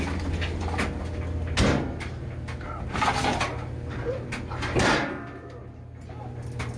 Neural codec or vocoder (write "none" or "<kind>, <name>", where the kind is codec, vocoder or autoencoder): none